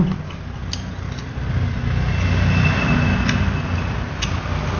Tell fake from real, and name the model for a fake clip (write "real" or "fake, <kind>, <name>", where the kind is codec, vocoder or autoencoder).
real